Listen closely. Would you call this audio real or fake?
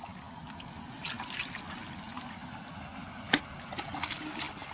real